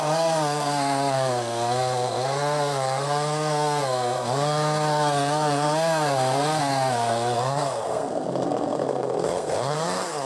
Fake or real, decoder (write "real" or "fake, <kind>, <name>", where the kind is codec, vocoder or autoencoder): fake, codec, SNAC